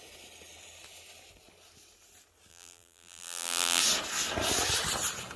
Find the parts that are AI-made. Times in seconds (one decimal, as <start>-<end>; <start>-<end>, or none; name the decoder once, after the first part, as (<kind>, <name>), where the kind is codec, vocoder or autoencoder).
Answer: 2.5-3.8 (vocoder, BigVGAN v2)